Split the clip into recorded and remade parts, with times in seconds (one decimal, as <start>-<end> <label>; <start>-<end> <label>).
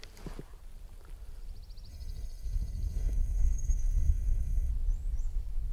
0.0-1.9 recorded; 1.9-4.7 remade; 4.7-5.7 recorded